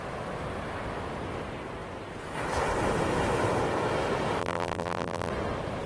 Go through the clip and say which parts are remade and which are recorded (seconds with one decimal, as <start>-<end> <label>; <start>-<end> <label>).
0.0-4.4 recorded; 4.4-5.3 remade; 5.3-5.9 recorded